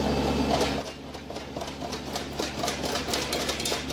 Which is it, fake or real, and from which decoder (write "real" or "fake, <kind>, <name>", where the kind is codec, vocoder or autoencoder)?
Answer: real